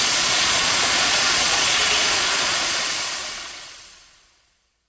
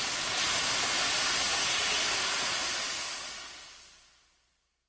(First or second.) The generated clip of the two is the first